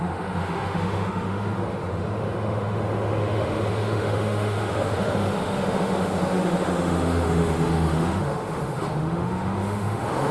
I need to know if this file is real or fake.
fake